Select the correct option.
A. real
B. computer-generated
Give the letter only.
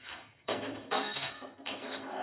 B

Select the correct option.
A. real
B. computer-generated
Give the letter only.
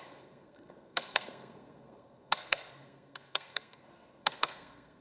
B